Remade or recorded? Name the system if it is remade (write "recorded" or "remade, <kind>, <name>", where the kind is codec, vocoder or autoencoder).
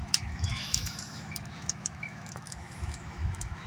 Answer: remade, autoencoder, DAC-VAE